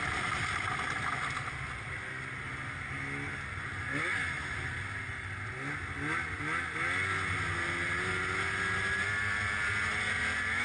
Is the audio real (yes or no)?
yes